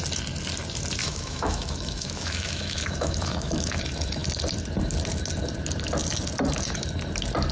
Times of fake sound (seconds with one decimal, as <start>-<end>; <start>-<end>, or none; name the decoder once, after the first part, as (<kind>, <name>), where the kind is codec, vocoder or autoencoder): 1.0-3.8 (autoencoder, DAC-VAE)